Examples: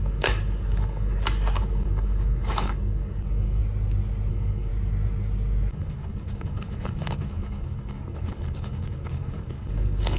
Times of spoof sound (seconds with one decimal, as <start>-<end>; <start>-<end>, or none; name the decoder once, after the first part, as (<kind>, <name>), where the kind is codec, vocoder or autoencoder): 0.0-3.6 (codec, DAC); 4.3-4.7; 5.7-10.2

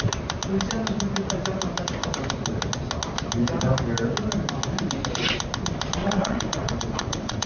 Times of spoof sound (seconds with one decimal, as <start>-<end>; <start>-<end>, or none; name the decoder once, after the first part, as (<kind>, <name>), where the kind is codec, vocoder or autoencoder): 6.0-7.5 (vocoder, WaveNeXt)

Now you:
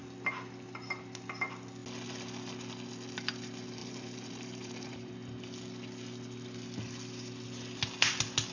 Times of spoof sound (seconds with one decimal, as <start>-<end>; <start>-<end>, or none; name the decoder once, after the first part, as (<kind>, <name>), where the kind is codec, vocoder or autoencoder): 3.8-5.1 (vocoder, BigVGAN v2)

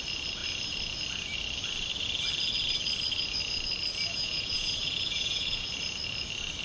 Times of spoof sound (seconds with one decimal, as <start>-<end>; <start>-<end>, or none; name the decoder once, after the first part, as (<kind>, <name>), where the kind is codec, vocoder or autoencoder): 4.1-5.7 (vocoder, Vocos)

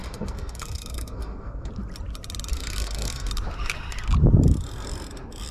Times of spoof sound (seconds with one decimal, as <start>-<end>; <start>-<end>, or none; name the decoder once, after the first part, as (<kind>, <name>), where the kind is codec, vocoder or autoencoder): 0.0-1.7 (codec, SNAC); 2.5-3.3

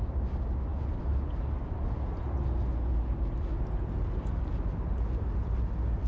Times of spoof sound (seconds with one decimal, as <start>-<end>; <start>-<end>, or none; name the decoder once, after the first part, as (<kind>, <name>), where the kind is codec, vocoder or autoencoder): none